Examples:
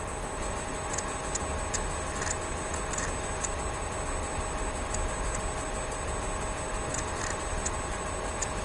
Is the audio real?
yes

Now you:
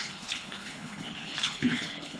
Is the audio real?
no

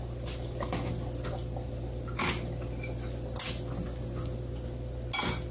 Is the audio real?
yes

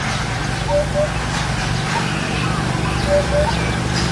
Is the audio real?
yes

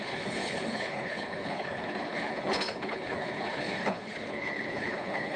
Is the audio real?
no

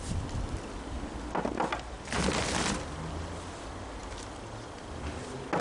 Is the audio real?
yes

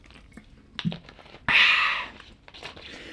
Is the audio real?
yes